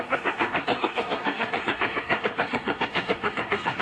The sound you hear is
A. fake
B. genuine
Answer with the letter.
A